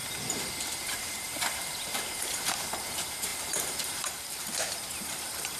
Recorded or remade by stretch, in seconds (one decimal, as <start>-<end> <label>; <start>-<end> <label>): 0.0-0.7 recorded; 0.7-5.6 remade